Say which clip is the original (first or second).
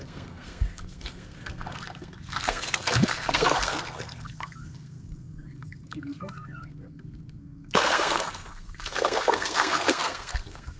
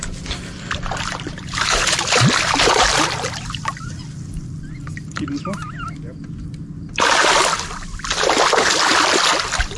second